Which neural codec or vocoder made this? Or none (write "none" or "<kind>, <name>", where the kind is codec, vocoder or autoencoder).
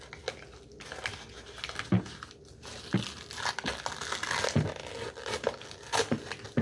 none